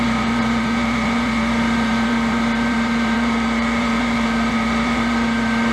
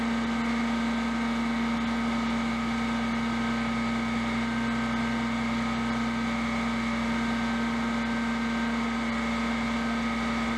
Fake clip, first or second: first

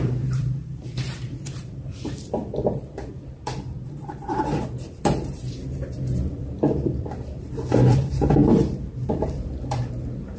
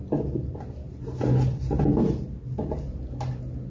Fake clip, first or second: first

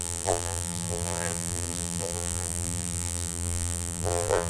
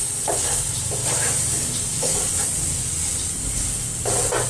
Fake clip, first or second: first